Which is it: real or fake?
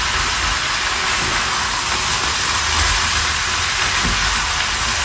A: real